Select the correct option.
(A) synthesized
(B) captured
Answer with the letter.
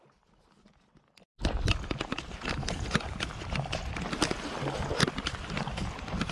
B